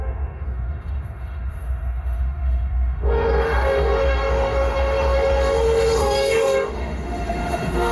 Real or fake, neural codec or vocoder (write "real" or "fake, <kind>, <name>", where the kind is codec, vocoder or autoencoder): fake, autoencoder, DAC-VAE